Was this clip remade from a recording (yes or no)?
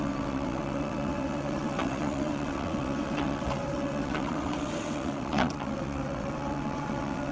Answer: yes